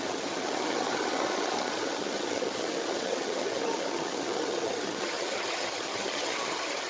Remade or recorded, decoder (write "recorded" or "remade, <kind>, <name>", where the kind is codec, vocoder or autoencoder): remade, vocoder, HiFi-GAN